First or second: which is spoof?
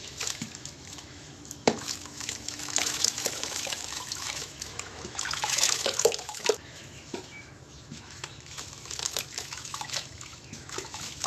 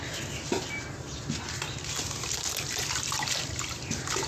first